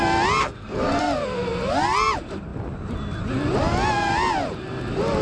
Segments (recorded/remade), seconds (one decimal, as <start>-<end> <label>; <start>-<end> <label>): 0.0-0.4 recorded; 0.4-1.0 remade; 1.0-5.2 recorded